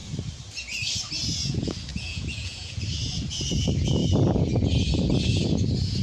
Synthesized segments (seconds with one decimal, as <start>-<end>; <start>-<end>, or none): 1.9-2.8